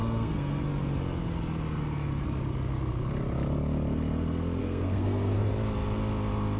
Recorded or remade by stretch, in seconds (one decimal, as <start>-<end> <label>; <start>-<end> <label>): 0.0-0.6 remade; 0.6-4.6 recorded; 4.6-5.5 remade; 5.5-6.6 recorded

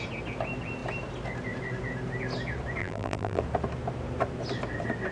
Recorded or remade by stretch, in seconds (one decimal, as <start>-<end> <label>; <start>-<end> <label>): 0.0-2.8 recorded; 2.8-3.4 remade; 3.4-5.1 recorded

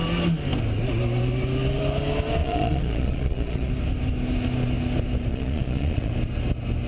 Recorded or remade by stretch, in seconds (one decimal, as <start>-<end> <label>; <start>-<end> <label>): 0.0-2.4 recorded; 2.4-3.7 remade; 3.7-5.3 recorded; 5.3-6.1 remade; 6.1-6.9 recorded